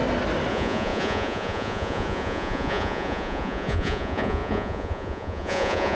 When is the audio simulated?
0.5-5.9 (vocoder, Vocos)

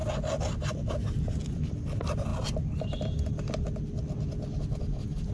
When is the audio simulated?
none

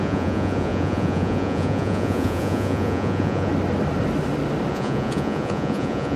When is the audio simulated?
0.0-3.5 (vocoder, Vocos); 4.7-6.2

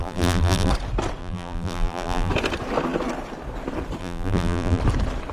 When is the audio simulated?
0.0-0.7 (vocoder, BigVGAN v2); 1.2-2.3; 4.0-4.8

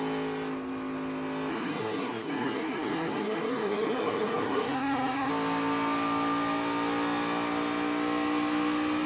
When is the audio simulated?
1.5-5.3 (codec, SNAC)

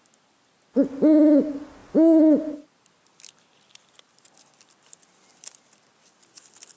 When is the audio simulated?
none

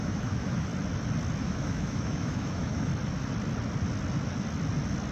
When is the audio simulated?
0.0-0.7 (autoencoder, DAC-VAE); 1.4-2.9